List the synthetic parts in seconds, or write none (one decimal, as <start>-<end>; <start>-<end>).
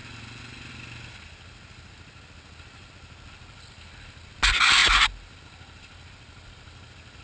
none